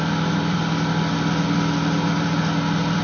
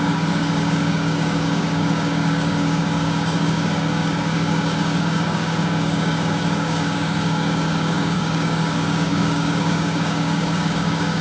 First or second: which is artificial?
second